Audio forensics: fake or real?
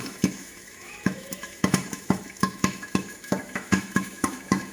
fake